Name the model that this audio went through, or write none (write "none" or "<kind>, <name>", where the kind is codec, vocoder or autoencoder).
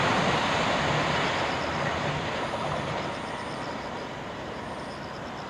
none